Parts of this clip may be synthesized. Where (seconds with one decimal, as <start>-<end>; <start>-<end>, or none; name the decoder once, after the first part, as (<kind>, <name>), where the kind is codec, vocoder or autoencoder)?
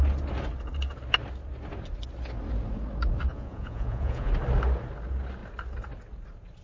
3.3-4.3 (vocoder, Vocos)